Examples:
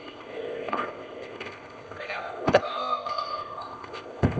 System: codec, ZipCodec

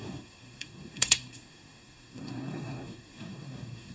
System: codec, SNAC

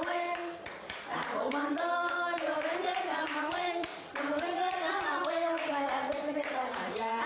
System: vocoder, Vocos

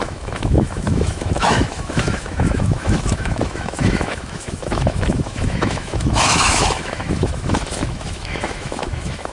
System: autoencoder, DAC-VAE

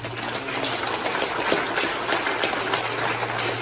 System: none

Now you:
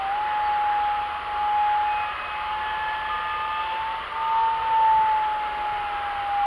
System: none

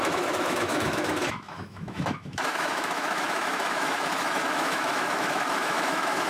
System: autoencoder, DAC-VAE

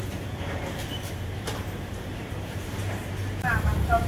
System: vocoder, BigVGAN v2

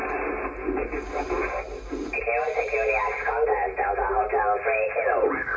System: none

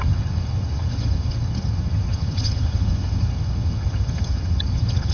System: vocoder, HiFi-GAN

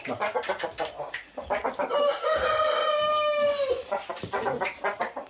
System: none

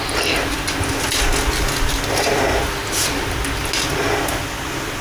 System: none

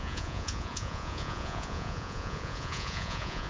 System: vocoder, Vocos